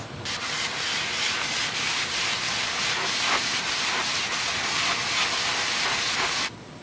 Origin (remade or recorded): recorded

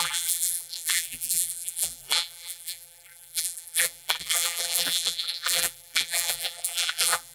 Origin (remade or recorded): remade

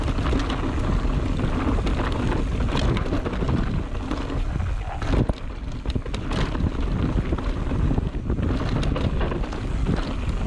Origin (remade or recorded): recorded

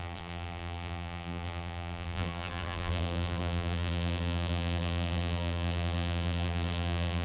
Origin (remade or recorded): remade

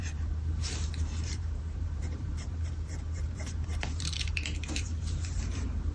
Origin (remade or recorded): remade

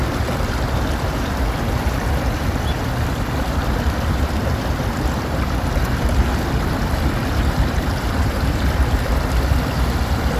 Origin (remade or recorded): remade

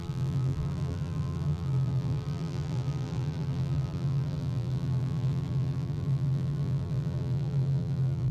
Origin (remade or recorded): remade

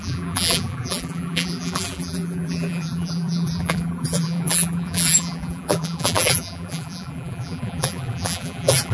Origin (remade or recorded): remade